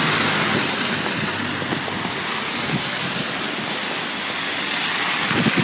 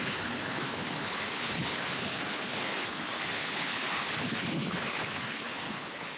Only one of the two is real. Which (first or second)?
first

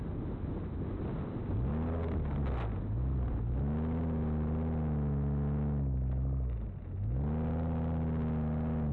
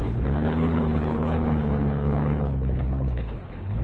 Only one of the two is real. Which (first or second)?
first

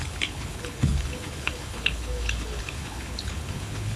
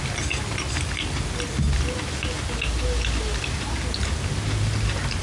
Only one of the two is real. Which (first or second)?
second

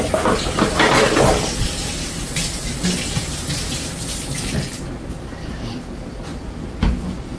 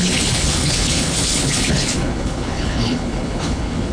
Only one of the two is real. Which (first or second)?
first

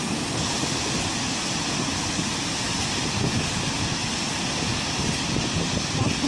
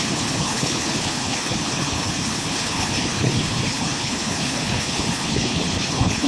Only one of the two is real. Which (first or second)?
first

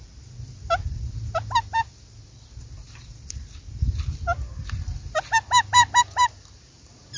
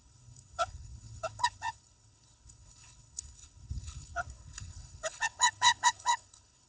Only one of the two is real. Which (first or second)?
first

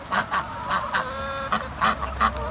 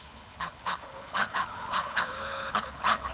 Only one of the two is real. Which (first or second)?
first